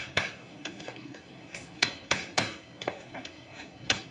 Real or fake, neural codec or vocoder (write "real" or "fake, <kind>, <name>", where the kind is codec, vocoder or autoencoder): fake, codec, SNAC